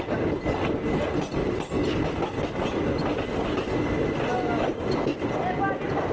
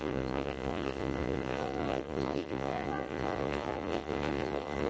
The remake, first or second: second